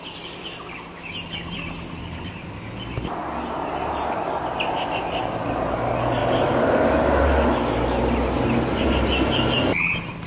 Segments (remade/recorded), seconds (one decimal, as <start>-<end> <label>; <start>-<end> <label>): 0.0-10.3 recorded